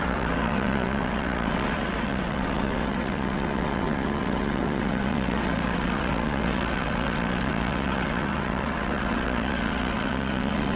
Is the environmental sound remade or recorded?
remade